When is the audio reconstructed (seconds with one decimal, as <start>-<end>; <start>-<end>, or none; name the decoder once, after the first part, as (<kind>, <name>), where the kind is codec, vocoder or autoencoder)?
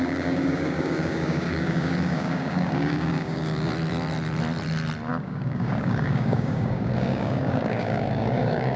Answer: 0.0-3.7 (codec, DAC); 5.1-8.8